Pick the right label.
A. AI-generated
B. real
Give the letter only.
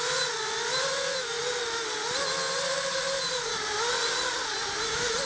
B